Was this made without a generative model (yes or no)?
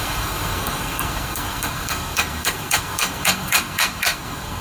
no